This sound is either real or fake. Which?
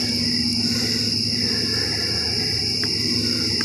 real